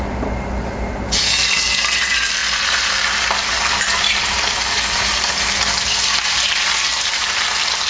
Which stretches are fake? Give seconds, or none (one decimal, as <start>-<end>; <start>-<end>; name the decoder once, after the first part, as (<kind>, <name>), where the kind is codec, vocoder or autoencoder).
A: none

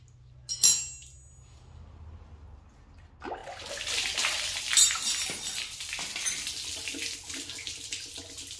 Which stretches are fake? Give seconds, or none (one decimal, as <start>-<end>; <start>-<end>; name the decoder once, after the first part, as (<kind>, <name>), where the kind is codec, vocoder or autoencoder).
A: none

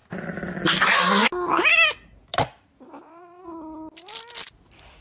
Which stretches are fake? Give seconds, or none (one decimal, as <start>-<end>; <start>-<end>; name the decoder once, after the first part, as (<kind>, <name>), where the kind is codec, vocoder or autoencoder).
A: 2.3-3.4 (vocoder, BigVGAN v2)

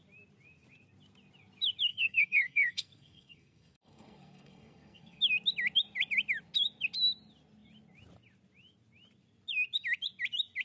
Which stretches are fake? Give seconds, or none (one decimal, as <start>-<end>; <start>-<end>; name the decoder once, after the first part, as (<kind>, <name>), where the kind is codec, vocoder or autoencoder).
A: 1.9-5.2 (codec, SNAC)

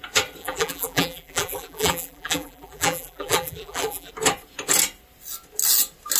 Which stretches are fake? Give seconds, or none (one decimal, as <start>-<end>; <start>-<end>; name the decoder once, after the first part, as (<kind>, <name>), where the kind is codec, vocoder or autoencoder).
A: 0.4-4.1 (vocoder, BigVGAN v2)

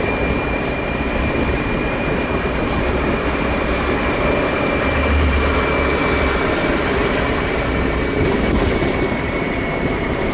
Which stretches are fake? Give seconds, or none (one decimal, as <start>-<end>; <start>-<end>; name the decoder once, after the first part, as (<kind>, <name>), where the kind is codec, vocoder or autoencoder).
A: 0.0-10.3 (vocoder, BigVGAN v2)

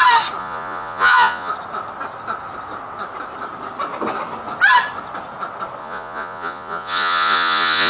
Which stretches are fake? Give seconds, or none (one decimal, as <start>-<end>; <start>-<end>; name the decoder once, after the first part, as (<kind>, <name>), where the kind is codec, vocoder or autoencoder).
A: 0.4-1.5 (vocoder, Vocos); 5.8-7.9